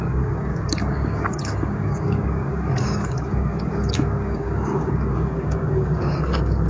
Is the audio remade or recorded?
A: remade